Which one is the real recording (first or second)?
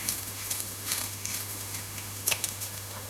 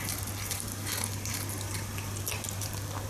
second